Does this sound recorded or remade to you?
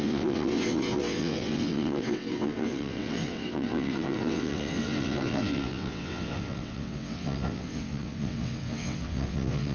remade